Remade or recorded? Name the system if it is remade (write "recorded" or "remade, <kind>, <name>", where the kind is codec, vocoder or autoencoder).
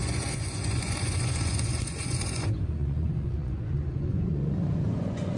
remade, vocoder, Vocos